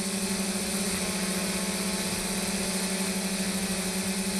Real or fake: real